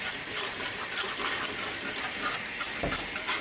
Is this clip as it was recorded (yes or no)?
yes